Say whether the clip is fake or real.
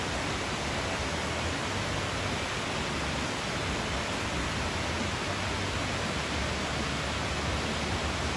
real